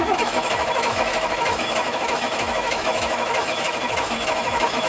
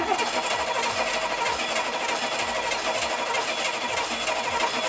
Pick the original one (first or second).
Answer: second